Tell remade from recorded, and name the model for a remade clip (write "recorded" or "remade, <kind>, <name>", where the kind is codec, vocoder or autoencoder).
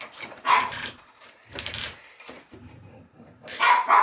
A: remade, vocoder, BigVGAN v2